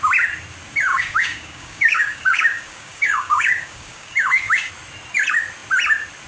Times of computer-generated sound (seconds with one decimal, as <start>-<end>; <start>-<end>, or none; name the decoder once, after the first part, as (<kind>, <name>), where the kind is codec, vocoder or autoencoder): 0.9-4.7 (codec, DAC)